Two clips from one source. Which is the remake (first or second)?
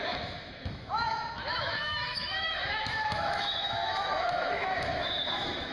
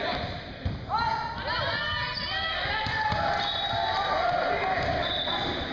first